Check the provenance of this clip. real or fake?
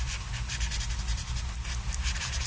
real